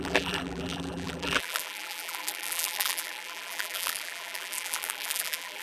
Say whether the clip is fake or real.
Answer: fake